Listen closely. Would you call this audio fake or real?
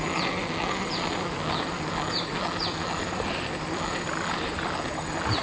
real